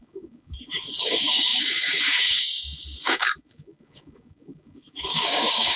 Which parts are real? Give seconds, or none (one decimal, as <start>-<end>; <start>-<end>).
none